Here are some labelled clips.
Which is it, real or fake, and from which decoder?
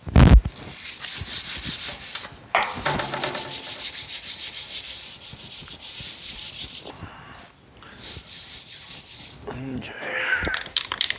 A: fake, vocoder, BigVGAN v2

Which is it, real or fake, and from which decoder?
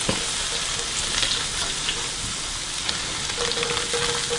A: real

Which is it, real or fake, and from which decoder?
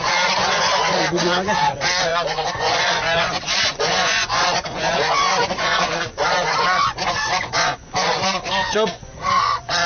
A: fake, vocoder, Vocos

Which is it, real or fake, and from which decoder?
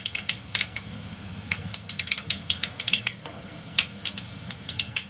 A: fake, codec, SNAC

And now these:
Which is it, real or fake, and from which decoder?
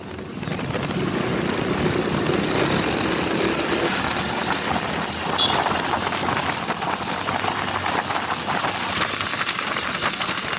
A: real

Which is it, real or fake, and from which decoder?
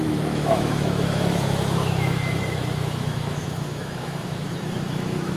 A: fake, autoencoder, DAC-VAE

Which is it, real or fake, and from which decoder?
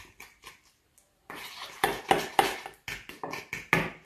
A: real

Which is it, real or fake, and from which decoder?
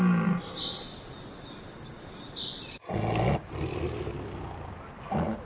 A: real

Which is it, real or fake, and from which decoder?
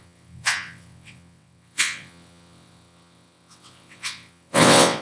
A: fake, vocoder, WaveNeXt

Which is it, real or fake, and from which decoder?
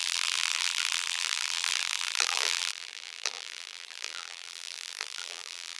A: fake, vocoder, BigVGAN v2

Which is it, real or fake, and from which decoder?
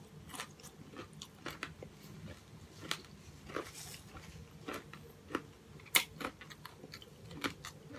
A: real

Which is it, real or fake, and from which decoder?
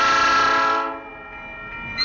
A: real